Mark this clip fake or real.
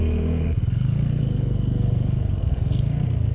fake